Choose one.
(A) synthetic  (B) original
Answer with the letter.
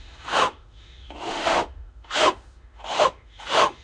A